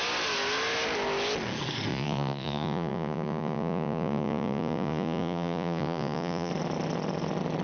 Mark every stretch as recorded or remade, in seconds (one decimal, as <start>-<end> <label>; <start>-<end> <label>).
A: 0.0-1.9 recorded; 1.9-6.5 remade; 6.5-7.6 recorded